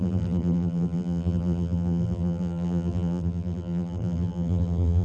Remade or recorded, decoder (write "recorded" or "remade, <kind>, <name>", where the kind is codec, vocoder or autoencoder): remade, vocoder, BigVGAN v2